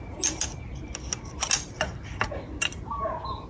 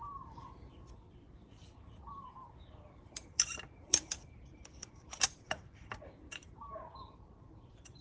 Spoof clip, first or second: second